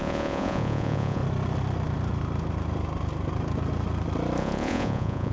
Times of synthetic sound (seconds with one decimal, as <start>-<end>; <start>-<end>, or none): 0.0-1.2; 4.4-5.3